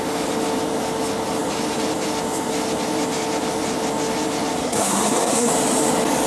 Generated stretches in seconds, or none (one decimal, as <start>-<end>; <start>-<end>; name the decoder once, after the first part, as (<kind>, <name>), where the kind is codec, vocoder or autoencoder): 4.6-5.5 (codec, SNAC)